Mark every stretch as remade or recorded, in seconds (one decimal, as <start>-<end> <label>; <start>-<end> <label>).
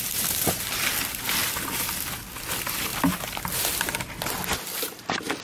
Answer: 0.0-5.4 recorded